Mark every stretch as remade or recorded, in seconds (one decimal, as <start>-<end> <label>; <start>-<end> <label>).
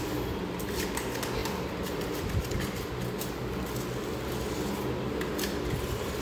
0.0-6.2 recorded